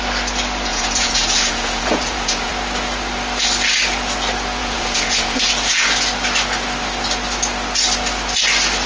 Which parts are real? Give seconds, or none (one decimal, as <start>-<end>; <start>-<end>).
0.0-0.7; 2.5-4.6; 5.5-8.9